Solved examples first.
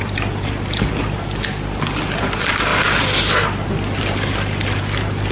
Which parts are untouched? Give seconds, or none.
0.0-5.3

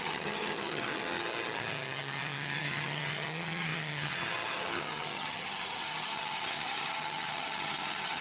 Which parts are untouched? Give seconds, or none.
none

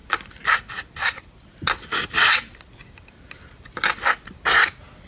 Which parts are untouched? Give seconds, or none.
0.7-5.1

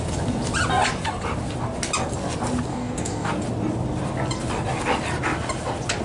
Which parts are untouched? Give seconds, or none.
0.0-2.7; 3.3-6.0

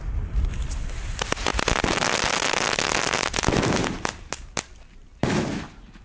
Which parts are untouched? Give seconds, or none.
0.0-6.0

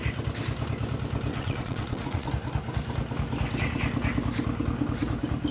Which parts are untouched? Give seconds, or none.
0.0-1.3; 2.3-5.5

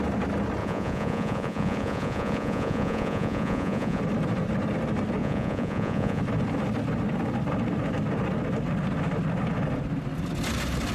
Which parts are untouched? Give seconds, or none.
0.0-0.6; 4.0-5.2; 6.2-10.9